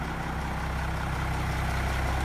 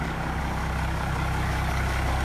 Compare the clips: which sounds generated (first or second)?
second